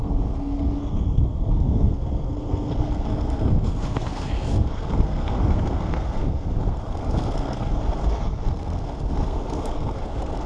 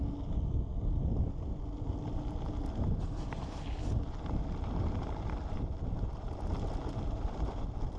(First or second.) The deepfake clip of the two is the first